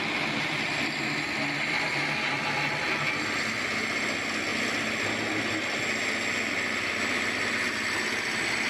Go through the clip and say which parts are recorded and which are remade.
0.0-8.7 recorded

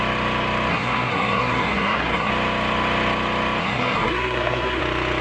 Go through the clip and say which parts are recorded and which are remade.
0.0-0.7 recorded; 0.7-2.3 remade; 2.3-3.6 recorded; 3.6-4.8 remade; 4.8-5.2 recorded

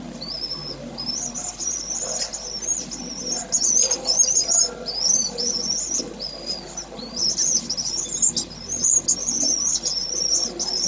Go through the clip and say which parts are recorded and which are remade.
0.0-10.9 recorded

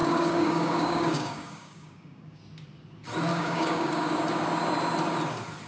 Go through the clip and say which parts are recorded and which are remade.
0.0-2.4 remade; 2.4-3.3 recorded; 3.3-4.2 remade; 4.2-5.7 recorded

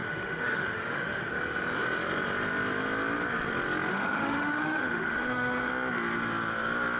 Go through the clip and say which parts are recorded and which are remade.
0.0-1.3 remade; 1.3-3.9 recorded; 3.9-5.7 remade; 5.7-7.0 recorded

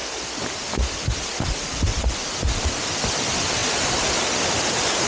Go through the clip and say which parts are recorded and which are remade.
0.0-5.1 recorded

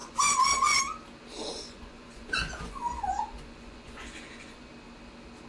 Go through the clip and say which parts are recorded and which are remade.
0.0-0.8 remade; 0.8-1.4 recorded; 1.4-4.7 remade; 4.7-5.5 recorded

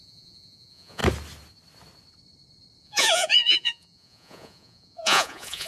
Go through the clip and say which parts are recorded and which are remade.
0.0-1.0 remade; 1.0-2.8 recorded; 2.8-5.7 remade